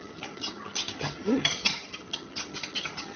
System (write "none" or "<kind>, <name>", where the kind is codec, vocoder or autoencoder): vocoder, HiFi-GAN